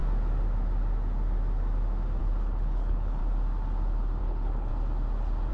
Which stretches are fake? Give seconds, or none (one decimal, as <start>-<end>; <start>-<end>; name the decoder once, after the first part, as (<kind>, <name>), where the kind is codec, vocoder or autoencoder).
2.2-3.2 (codec, HILCodec); 4.2-4.7